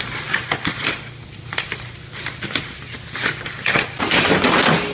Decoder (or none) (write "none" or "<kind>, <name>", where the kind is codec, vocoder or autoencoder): none